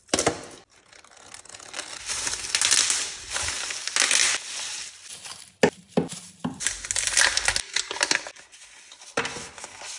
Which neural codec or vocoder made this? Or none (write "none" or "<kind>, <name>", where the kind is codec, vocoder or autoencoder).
none